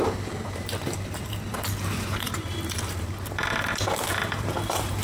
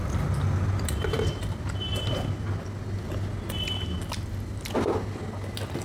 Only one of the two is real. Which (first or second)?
second